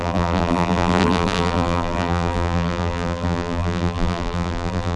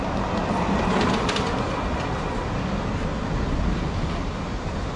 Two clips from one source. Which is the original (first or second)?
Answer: second